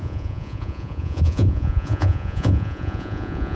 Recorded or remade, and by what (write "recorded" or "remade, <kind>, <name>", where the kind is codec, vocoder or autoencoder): remade, vocoder, Vocos